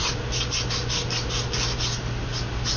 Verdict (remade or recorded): recorded